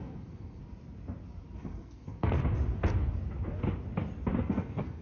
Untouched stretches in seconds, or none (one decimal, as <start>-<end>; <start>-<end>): 0.6-1.6; 2.4-4.4